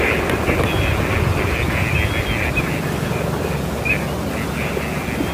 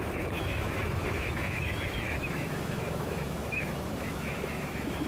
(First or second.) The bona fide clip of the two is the first